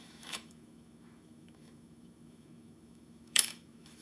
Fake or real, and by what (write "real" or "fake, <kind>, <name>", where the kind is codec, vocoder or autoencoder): fake, autoencoder, DAC-VAE